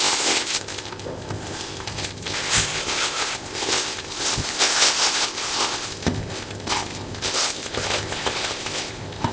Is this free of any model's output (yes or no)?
no